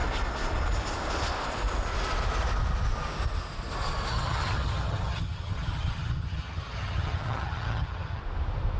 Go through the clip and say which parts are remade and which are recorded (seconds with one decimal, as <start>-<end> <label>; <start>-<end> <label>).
0.0-4.1 recorded; 4.1-8.2 remade; 8.2-8.8 recorded